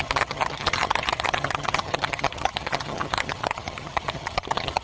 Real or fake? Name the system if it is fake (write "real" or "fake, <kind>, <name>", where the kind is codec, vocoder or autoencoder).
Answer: fake, vocoder, HiFi-GAN